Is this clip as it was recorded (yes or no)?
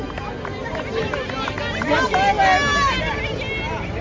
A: yes